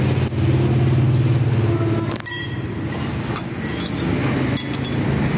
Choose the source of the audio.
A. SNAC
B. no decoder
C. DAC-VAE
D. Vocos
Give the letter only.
B